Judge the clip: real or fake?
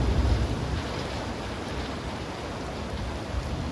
real